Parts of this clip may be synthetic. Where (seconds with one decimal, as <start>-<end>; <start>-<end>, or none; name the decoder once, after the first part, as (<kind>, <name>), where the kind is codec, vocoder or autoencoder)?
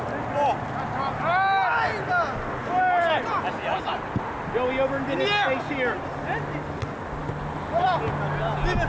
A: none